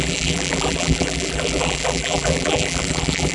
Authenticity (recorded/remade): remade